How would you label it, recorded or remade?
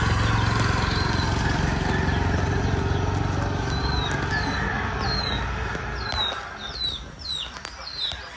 recorded